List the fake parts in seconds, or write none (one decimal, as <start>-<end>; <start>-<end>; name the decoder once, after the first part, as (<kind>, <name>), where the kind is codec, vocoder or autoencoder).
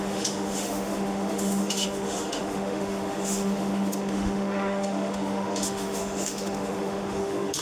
0.0-7.6 (autoencoder, DAC-VAE)